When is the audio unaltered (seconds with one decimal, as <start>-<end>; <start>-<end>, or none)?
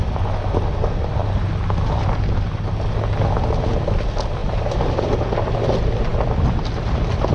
0.0-4.4; 5.1-7.3